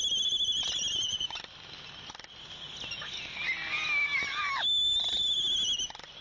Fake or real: real